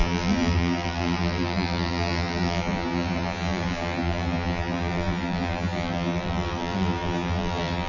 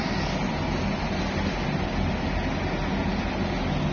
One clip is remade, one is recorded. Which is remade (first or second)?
first